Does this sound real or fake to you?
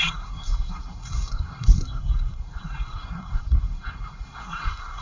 fake